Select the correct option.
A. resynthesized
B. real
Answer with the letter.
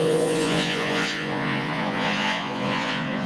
A